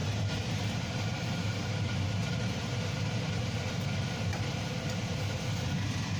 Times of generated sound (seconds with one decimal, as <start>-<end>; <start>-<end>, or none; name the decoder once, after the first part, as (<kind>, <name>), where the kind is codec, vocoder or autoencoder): 0.0-3.7 (vocoder, BigVGAN v2); 4.3-5.4